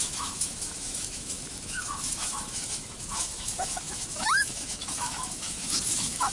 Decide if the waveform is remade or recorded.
remade